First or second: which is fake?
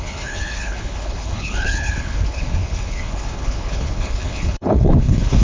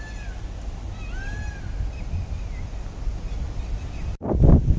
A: first